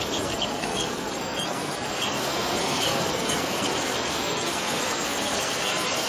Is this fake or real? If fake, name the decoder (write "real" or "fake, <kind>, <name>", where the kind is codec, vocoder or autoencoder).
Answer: fake, codec, SNAC